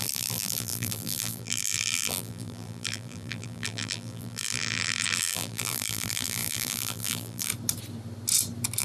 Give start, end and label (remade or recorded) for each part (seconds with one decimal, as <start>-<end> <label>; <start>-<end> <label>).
0.0-7.5 remade; 7.5-8.8 recorded

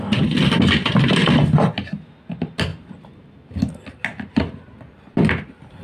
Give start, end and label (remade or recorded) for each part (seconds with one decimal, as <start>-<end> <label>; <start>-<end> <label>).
0.0-5.8 recorded

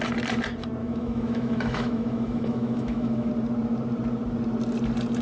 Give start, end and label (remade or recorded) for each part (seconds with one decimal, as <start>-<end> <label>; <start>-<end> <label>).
0.0-0.8 recorded; 0.8-3.3 remade; 3.3-5.2 recorded

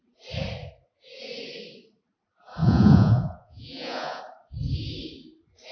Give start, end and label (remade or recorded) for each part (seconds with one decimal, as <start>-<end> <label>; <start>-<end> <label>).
0.0-2.6 recorded; 2.6-4.2 remade; 4.2-5.7 recorded

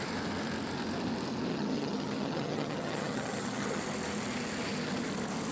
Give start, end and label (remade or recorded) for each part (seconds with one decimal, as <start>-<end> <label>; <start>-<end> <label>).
0.0-1.5 recorded; 1.5-3.8 remade; 3.8-5.5 recorded